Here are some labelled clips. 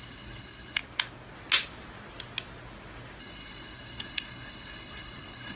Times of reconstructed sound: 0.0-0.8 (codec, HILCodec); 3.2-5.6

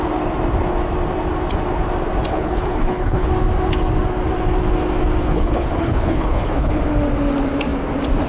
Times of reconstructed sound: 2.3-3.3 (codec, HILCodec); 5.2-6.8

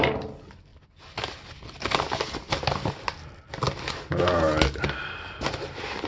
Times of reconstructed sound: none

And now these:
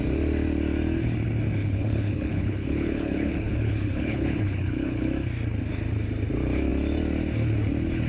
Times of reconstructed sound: 1.6-5.1 (codec, HILCodec)

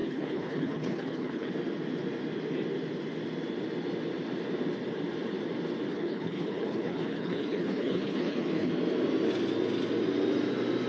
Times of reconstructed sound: 0.0-1.5 (codec, HILCodec); 5.9-8.7

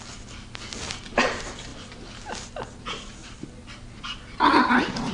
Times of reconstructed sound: none

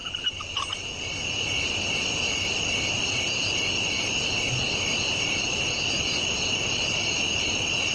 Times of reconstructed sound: none

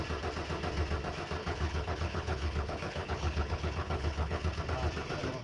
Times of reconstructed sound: 1.4-4.6 (codec, HILCodec)